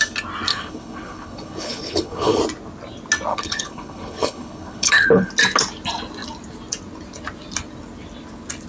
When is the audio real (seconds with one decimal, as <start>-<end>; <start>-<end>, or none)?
0.0-0.5; 2.4-3.3; 5.3-8.7